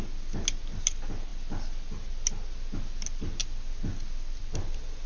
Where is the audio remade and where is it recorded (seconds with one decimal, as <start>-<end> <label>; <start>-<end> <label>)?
0.0-5.1 recorded